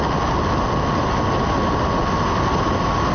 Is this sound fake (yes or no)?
no